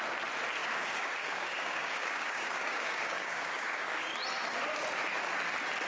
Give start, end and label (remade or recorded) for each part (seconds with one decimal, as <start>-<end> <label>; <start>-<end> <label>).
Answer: 0.0-0.6 recorded; 0.6-4.1 remade; 4.1-5.9 recorded

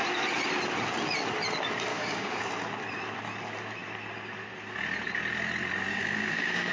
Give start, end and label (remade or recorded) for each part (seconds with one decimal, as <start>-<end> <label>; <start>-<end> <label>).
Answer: 0.0-1.9 recorded; 1.9-2.4 remade; 2.4-5.9 recorded; 5.9-6.7 remade

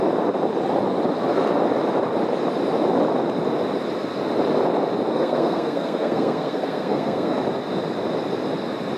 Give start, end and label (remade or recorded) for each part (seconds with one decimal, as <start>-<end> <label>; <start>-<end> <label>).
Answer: 0.0-5.1 recorded; 5.1-7.4 remade; 7.4-9.0 recorded

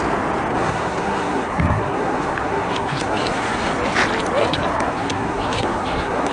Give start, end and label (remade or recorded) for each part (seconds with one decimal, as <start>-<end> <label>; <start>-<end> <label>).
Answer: 0.0-0.5 recorded; 0.5-3.7 remade; 3.7-4.4 recorded; 4.4-6.3 remade